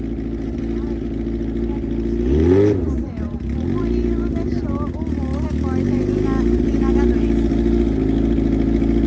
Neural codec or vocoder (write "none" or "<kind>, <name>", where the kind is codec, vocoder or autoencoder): none